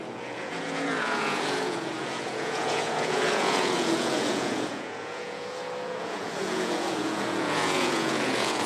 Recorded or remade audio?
remade